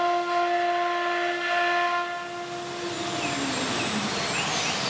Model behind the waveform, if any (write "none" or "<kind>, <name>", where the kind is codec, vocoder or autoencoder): none